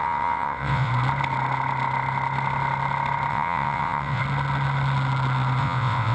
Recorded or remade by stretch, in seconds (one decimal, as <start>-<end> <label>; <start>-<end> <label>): 0.0-0.9 remade; 0.9-3.3 recorded; 3.3-4.2 remade; 4.2-5.6 recorded; 5.6-6.1 remade